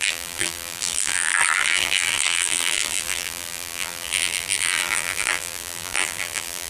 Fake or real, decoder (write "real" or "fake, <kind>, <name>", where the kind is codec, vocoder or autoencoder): fake, vocoder, BigVGAN v2